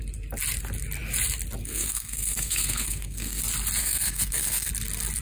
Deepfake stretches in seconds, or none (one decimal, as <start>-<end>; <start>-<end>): 1.6-3.4; 3.8-4.7